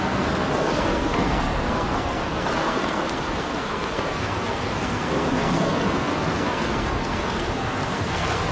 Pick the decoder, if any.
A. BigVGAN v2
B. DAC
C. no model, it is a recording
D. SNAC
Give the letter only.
D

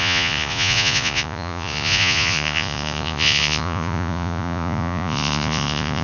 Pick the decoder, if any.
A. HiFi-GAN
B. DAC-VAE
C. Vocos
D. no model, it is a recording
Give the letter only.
C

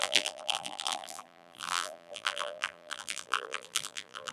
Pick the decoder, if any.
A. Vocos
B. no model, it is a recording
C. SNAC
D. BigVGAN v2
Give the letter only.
D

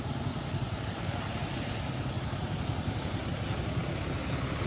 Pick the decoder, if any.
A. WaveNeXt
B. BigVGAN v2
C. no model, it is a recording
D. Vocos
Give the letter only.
C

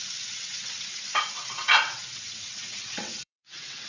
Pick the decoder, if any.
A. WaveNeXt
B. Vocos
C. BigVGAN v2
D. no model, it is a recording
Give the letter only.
A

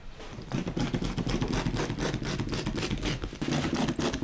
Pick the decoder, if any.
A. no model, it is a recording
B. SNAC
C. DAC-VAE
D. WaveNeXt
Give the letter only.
A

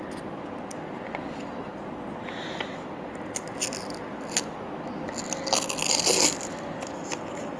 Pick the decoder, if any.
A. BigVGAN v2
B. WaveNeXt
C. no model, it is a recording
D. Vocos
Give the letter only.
C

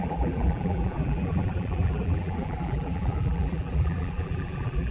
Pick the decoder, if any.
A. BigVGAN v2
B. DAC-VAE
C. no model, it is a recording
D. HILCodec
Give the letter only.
A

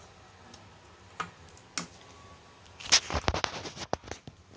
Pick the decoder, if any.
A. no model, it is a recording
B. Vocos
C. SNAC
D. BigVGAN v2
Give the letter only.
A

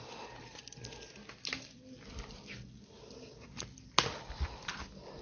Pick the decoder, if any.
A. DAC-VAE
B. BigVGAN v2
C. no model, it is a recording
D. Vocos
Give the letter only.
C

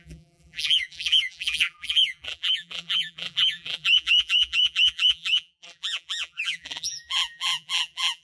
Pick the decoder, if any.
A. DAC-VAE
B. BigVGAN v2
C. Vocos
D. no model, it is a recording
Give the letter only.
B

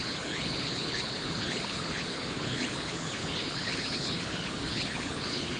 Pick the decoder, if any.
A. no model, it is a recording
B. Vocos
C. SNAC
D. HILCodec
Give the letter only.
D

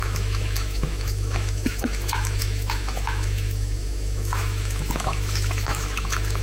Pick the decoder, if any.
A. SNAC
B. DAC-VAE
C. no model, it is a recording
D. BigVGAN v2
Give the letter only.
B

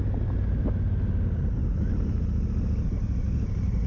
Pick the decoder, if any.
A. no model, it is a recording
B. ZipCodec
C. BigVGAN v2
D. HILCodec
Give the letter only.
A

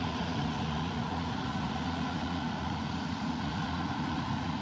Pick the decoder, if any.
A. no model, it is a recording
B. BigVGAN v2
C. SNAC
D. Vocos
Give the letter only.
D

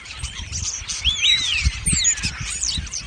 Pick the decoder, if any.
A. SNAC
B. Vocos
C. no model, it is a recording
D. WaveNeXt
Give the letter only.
C